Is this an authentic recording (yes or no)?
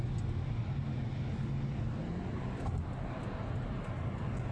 yes